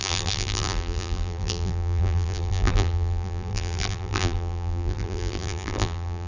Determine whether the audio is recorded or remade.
remade